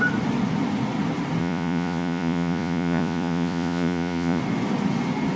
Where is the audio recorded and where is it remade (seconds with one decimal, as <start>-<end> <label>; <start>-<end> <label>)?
0.0-1.4 recorded; 1.4-4.4 remade; 4.4-5.4 recorded